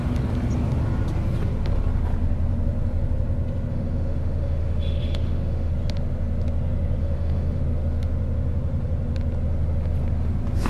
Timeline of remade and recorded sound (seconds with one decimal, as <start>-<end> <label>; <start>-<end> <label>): 0.0-3.7 recorded; 3.7-5.7 remade; 5.7-7.0 recorded; 7.0-7.6 remade; 7.6-10.7 recorded